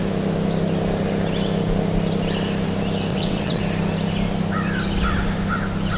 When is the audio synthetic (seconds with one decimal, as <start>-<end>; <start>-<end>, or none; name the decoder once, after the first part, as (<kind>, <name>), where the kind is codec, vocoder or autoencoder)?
3.1-3.6 (vocoder, WaveNeXt)